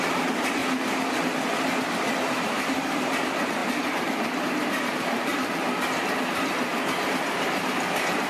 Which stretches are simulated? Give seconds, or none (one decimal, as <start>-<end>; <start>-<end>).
0.0-0.6; 2.1-5.3; 6.2-8.3